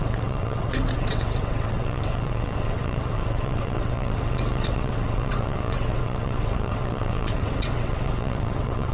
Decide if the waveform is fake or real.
fake